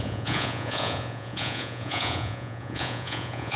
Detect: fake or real fake